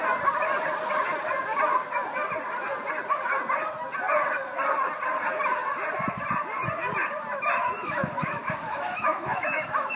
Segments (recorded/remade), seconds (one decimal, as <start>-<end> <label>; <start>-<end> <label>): 0.0-7.8 recorded; 7.8-10.0 remade